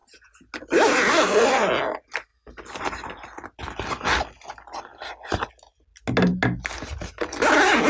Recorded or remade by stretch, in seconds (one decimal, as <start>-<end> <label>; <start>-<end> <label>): 0.0-7.9 recorded